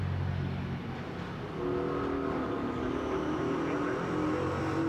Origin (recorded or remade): recorded